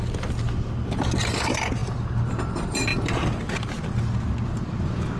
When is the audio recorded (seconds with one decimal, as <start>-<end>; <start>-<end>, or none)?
0.0-5.2